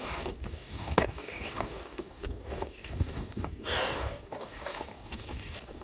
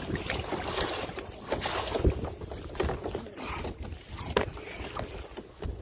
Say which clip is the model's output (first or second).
first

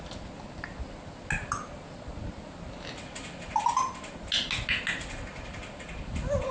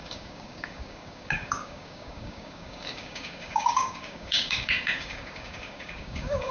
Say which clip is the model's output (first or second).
second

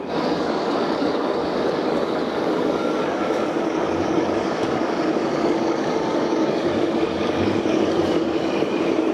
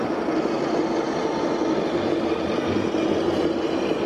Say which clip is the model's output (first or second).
first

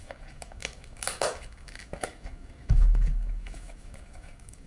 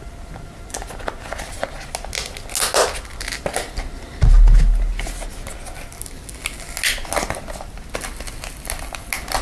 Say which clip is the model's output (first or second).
first